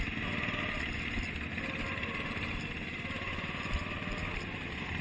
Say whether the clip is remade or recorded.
recorded